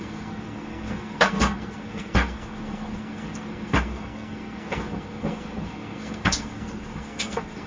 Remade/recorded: remade